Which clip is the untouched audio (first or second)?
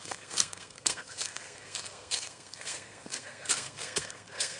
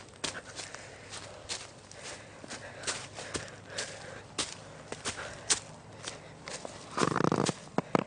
second